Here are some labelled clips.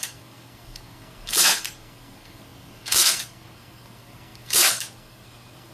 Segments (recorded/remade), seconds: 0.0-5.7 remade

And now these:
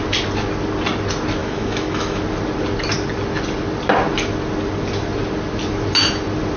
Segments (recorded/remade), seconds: 0.0-1.4 recorded; 1.4-2.2 remade; 2.2-6.6 recorded

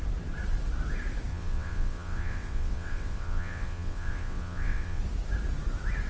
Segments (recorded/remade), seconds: 0.0-1.3 recorded; 1.3-5.0 remade; 5.0-6.1 recorded

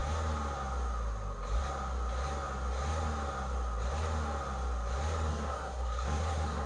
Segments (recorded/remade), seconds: 0.0-5.3 recorded; 5.3-6.7 remade

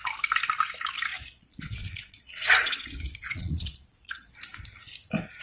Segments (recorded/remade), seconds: 0.0-1.1 recorded; 1.1-4.3 remade; 4.3-5.4 recorded

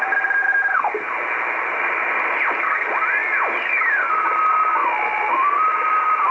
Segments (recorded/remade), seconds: 0.0-6.3 recorded

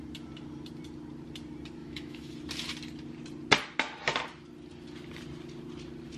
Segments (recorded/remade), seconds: 0.0-1.8 recorded; 1.8-2.3 remade; 2.3-6.2 recorded